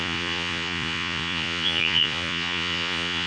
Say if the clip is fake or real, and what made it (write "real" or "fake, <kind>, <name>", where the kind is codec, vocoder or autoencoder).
fake, vocoder, Vocos